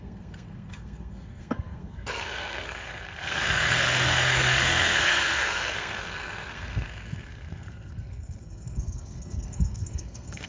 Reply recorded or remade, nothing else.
remade